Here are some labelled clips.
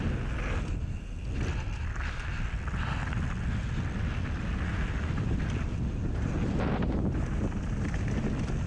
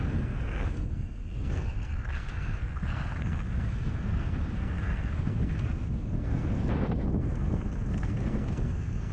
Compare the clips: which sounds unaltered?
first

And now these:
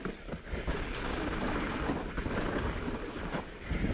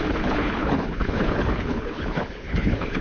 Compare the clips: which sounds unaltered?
first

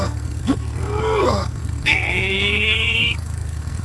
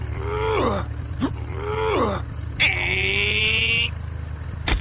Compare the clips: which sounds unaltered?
second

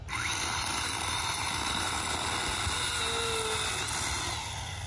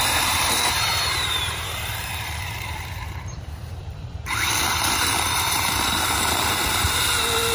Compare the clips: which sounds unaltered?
first